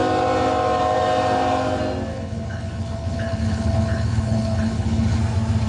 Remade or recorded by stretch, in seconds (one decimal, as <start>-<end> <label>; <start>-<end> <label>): 0.0-2.1 recorded; 2.1-5.2 remade; 5.2-5.7 recorded